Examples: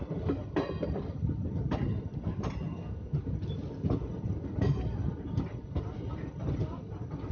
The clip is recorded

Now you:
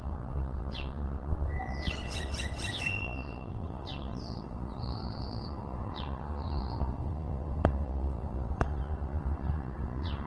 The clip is remade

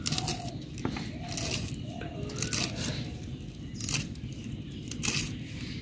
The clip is recorded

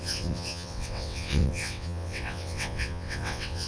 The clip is remade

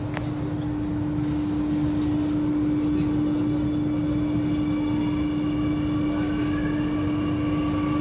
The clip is recorded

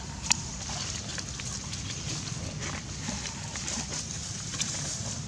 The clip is recorded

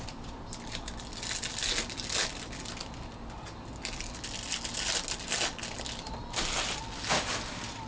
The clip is recorded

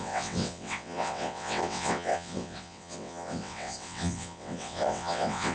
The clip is remade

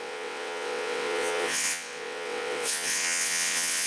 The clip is remade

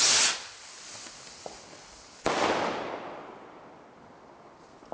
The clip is recorded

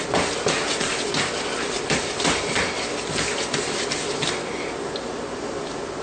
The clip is recorded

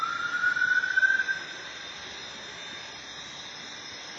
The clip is recorded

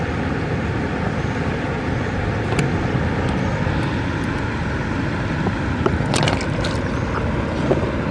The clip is recorded